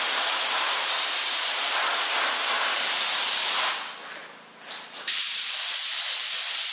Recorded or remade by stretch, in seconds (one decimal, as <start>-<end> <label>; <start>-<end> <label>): 0.0-6.7 recorded